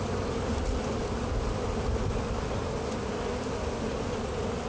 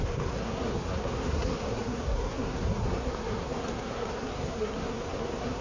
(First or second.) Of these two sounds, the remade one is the second